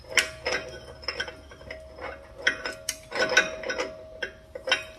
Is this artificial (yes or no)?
no